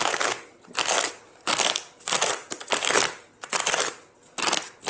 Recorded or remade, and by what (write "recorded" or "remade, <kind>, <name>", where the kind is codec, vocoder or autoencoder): remade, vocoder, BigVGAN v2